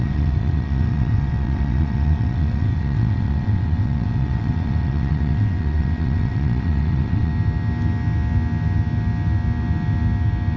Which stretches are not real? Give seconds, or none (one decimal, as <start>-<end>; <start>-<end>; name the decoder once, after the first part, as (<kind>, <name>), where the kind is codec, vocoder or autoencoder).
0.0-7.3 (vocoder, WaveNeXt)